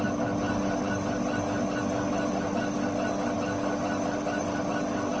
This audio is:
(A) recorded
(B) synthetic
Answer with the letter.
A